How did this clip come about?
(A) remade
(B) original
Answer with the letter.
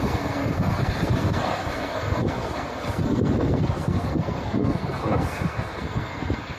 A